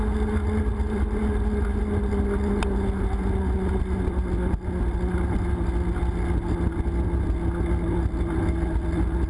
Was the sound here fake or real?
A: real